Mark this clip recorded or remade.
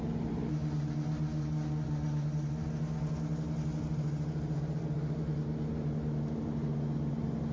recorded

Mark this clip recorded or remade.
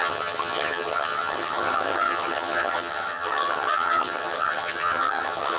remade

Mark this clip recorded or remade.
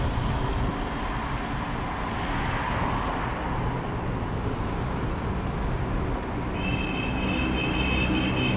recorded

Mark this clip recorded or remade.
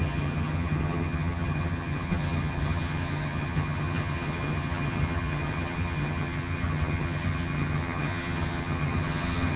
remade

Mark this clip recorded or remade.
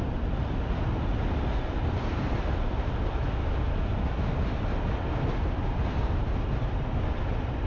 recorded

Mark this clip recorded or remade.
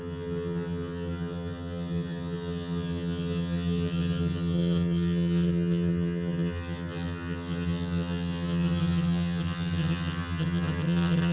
remade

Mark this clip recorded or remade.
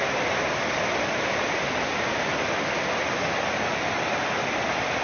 recorded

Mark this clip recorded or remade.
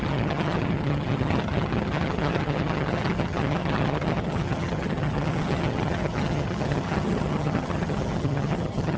remade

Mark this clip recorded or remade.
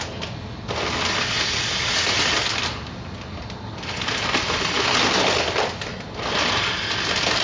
recorded